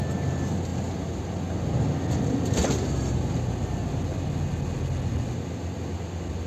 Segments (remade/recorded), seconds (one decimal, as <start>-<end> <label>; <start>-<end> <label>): 0.0-6.5 recorded